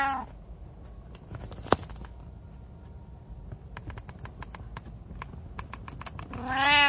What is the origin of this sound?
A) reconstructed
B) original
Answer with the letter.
B